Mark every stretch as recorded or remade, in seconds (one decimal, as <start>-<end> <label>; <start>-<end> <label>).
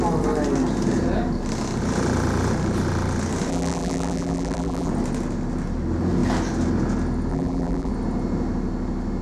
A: 0.0-3.5 recorded; 3.5-4.9 remade; 4.9-7.3 recorded; 7.3-7.9 remade; 7.9-9.2 recorded